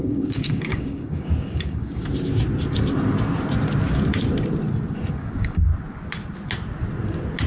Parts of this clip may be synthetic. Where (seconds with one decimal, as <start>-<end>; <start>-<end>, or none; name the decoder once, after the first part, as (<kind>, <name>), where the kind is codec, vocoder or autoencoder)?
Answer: 0.0-2.0 (codec, DAC); 5.1-5.7